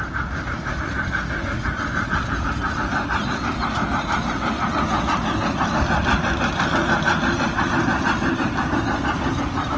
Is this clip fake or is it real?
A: fake